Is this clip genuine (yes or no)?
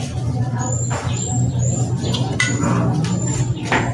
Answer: yes